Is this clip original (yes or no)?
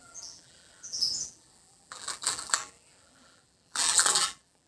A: no